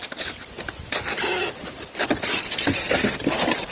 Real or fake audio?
real